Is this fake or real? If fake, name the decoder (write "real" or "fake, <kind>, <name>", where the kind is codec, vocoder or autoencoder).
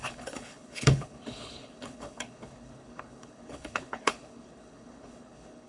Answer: fake, codec, HILCodec